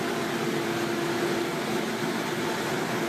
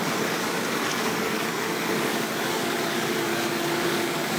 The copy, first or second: second